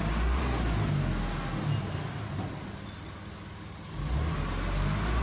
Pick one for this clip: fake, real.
real